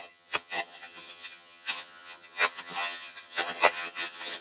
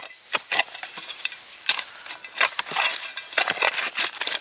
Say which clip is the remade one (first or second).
first